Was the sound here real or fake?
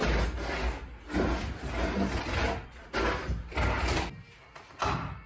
real